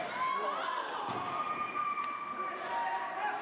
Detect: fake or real real